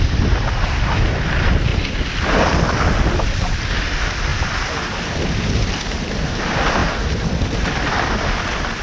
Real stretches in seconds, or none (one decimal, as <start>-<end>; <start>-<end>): 0.0-1.7; 2.2-4.3; 6.0-6.8; 7.6-8.8